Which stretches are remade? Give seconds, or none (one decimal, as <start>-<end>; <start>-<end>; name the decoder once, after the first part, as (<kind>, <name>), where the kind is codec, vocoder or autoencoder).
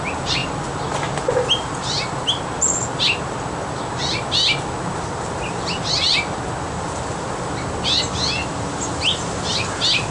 none